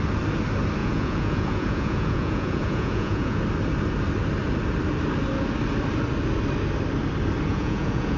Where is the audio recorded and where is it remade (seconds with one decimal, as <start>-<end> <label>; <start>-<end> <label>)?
0.0-0.8 recorded; 0.8-3.4 remade; 3.4-7.5 recorded; 7.5-8.2 remade

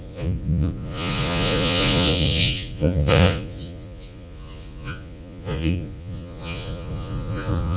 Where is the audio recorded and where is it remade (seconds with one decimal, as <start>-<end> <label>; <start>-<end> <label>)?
0.0-7.8 remade

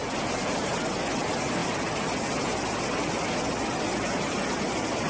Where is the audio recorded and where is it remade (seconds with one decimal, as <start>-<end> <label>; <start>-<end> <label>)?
0.0-5.1 recorded

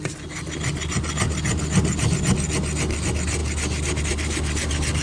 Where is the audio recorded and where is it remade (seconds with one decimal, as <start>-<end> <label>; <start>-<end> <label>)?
0.0-5.0 recorded